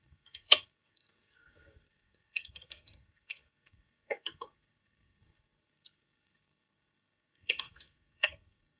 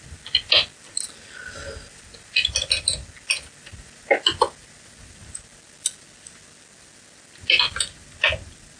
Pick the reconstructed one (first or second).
first